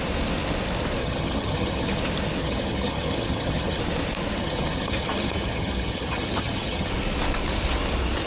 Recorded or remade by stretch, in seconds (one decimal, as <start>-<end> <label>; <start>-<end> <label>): 0.0-1.0 recorded; 1.0-2.0 remade; 2.0-2.4 recorded; 2.4-3.8 remade; 3.8-4.4 recorded; 4.4-6.9 remade; 6.9-8.3 recorded